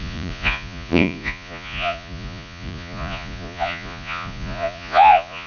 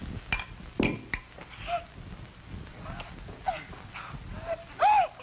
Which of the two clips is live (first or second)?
second